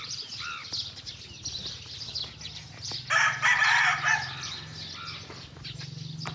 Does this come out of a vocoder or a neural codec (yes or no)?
no